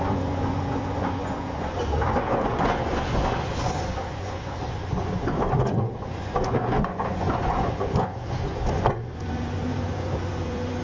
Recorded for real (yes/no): no